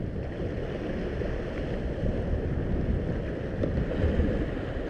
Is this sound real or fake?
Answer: real